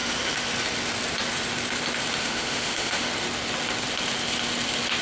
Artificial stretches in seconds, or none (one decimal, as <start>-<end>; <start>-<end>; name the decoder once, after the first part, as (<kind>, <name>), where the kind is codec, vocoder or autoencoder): 2.2-3.1 (autoencoder, DAC-VAE)